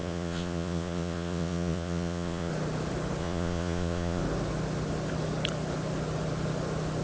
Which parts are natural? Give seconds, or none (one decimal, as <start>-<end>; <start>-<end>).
2.5-3.2; 4.2-7.0